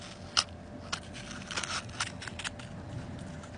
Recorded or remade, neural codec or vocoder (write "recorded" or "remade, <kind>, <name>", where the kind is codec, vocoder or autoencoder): recorded